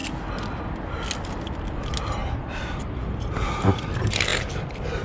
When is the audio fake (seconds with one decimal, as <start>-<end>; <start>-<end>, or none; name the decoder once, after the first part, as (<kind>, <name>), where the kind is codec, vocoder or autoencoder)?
2.2-2.8 (vocoder, BigVGAN v2)